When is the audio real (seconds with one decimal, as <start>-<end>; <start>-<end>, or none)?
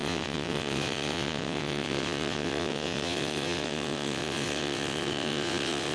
none